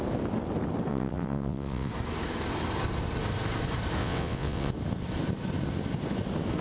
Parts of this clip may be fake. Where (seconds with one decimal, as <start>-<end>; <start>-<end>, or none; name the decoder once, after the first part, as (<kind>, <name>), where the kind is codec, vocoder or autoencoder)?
0.9-1.9 (vocoder, WaveNeXt); 4.0-4.7